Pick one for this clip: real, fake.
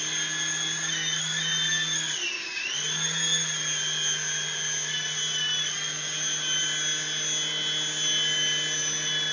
real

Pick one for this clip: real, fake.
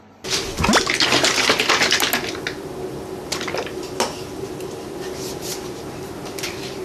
real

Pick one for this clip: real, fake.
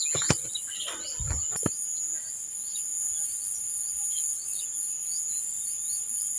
real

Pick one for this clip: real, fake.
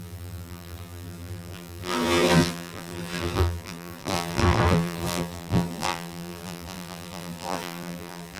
fake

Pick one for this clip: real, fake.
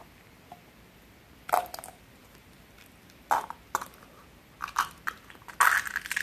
real